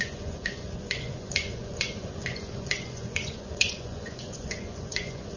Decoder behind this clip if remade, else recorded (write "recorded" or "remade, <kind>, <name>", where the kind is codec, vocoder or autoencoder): remade, vocoder, Vocos